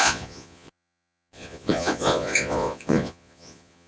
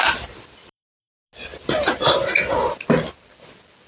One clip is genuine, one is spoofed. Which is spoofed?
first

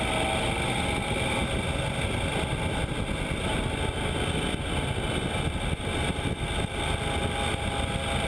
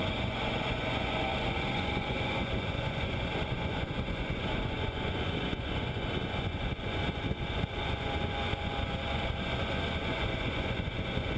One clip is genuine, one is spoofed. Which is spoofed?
second